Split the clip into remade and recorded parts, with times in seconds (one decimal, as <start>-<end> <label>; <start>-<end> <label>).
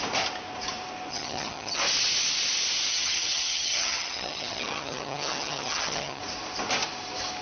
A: 0.0-1.1 recorded; 1.1-1.8 remade; 1.8-2.9 recorded; 2.9-6.2 remade; 6.2-7.4 recorded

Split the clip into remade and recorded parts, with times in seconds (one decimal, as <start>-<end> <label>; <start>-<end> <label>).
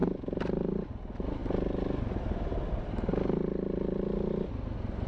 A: 0.0-5.1 recorded